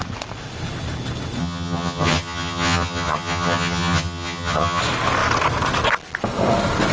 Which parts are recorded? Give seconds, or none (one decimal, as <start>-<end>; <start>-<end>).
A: 0.0-1.4; 4.8-6.9